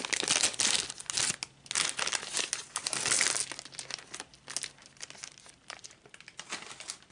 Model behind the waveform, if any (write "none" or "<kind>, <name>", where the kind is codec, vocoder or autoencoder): none